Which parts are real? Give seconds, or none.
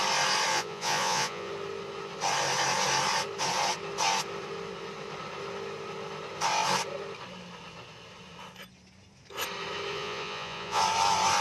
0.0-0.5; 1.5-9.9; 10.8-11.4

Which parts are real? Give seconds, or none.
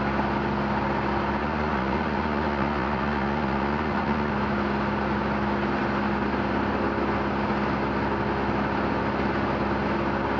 0.0-1.4; 4.3-10.4